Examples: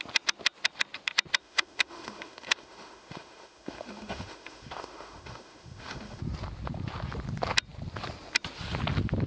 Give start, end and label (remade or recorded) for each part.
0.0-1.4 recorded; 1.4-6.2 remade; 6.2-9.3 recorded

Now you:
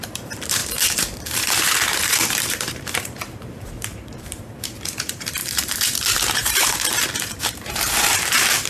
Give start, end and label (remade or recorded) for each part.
0.0-8.7 remade

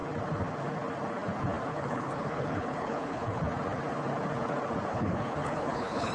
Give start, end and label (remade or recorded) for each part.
0.0-1.7 recorded; 1.7-3.4 remade; 3.4-4.9 recorded; 4.9-6.1 remade

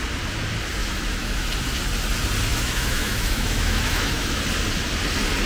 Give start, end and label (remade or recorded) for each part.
0.0-0.8 recorded; 0.8-1.5 remade; 1.5-2.5 recorded; 2.5-4.4 remade; 4.4-5.5 recorded

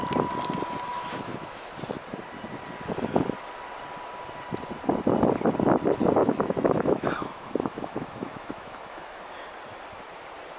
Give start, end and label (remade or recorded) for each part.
0.0-0.9 recorded; 0.9-1.7 remade; 1.7-6.2 recorded; 6.2-9.2 remade; 9.2-10.6 recorded